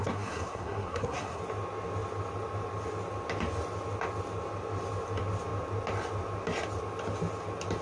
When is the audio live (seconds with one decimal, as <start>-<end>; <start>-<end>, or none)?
1.4-7.8